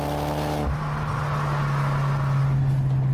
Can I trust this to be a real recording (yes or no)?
yes